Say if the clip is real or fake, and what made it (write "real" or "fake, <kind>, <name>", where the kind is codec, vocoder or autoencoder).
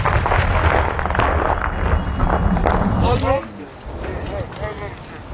real